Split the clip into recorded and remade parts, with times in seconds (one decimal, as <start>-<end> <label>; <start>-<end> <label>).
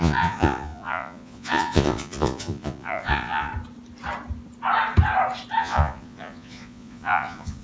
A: 0.0-3.5 remade; 3.5-5.6 recorded; 5.6-7.6 remade